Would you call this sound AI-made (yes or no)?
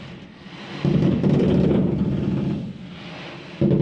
no